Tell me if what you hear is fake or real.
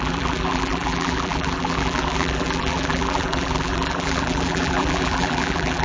fake